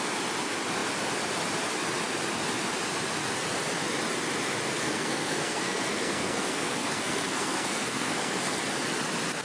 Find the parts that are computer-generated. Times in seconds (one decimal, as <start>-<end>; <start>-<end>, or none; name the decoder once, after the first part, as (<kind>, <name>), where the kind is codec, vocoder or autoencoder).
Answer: 4.7-8.6 (codec, SNAC)